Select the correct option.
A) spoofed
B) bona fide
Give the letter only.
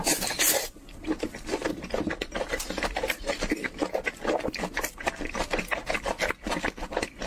B